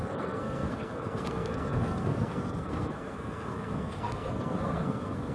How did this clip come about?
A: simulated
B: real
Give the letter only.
A